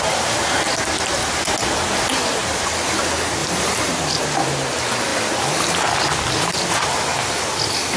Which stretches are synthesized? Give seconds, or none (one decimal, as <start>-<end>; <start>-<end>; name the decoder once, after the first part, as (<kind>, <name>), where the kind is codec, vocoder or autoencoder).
3.4-4.4 (vocoder, BigVGAN v2)